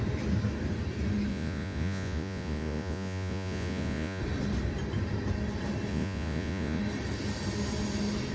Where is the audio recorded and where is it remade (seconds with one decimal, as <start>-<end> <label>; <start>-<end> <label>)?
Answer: 0.0-1.3 recorded; 1.3-4.2 remade; 4.2-5.9 recorded; 5.9-6.8 remade; 6.8-8.3 recorded